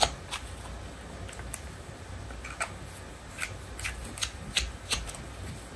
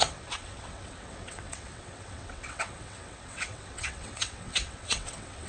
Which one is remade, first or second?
second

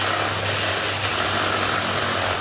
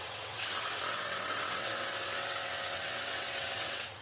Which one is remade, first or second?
second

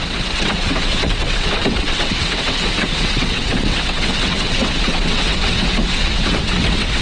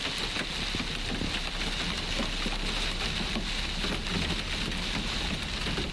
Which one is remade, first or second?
first